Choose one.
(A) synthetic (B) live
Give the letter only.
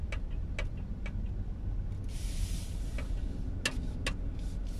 B